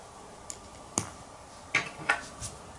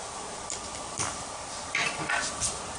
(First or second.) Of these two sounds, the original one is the first